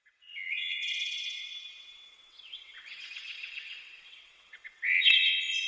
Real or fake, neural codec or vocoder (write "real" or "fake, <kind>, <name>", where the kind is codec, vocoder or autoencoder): fake, vocoder, WaveNeXt